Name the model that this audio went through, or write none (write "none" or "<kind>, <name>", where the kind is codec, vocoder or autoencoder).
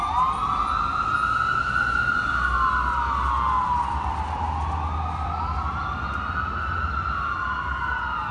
none